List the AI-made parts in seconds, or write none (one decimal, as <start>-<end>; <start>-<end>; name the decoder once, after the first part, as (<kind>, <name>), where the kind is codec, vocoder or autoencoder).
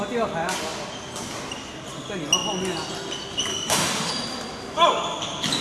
3.5-4.1 (autoencoder, DAC-VAE)